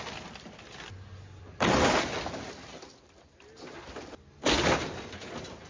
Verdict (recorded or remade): recorded